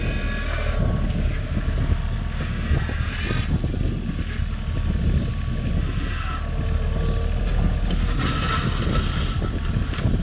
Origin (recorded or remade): recorded